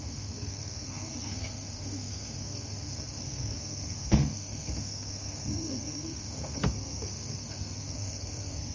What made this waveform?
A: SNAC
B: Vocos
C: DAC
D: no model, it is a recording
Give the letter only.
A